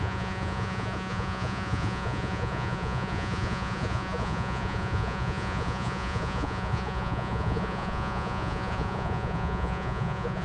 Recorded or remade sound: remade